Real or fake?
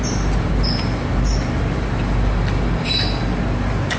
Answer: real